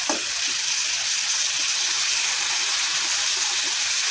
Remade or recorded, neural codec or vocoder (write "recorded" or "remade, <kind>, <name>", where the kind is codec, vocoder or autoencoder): remade, vocoder, BigVGAN v2